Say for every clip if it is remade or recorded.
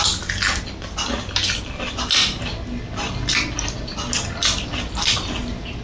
recorded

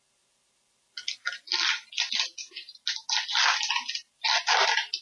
recorded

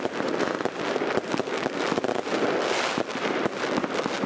remade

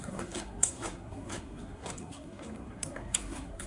remade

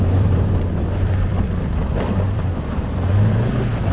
remade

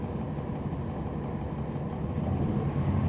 recorded